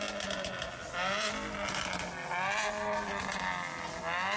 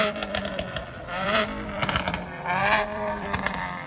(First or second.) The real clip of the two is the first